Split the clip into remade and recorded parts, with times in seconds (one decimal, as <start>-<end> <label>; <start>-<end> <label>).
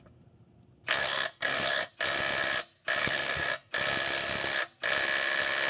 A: 0.0-1.0 recorded; 1.0-1.9 remade; 1.9-3.0 recorded; 3.0-3.7 remade; 3.7-5.7 recorded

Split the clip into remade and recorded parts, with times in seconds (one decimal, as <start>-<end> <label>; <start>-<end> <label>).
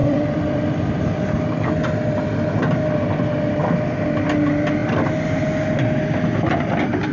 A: 0.0-1.0 remade; 1.0-7.1 recorded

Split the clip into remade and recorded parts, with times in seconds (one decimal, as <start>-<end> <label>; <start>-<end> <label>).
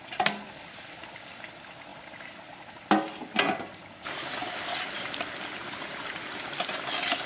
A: 0.0-5.6 recorded; 5.6-6.5 remade; 6.5-7.3 recorded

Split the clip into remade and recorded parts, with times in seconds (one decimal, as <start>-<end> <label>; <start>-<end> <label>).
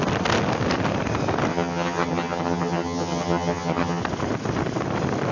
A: 0.0-1.5 recorded; 1.5-4.0 remade; 4.0-5.3 recorded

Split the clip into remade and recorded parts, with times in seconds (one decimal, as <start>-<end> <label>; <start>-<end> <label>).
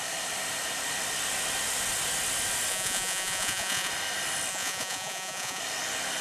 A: 0.0-2.7 recorded; 2.7-3.9 remade; 3.9-4.5 recorded; 4.5-5.6 remade; 5.6-6.2 recorded